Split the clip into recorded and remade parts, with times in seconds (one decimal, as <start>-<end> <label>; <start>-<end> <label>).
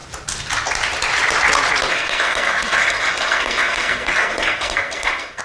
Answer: 0.0-1.9 recorded; 1.9-5.4 remade